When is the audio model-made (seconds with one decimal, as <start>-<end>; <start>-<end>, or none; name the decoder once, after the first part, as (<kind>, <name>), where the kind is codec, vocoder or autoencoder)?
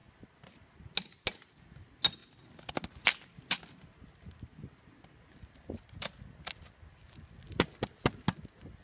none